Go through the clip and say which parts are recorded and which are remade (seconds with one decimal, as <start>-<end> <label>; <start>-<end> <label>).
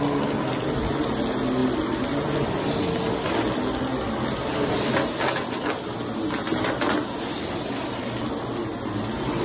0.0-9.4 recorded